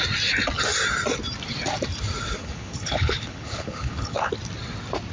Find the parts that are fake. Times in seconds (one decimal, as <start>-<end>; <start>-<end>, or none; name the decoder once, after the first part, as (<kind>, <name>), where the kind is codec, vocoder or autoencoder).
2.4-4.3 (codec, HILCodec)